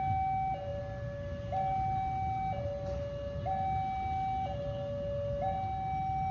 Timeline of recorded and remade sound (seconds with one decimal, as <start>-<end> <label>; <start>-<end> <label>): 0.0-6.3 recorded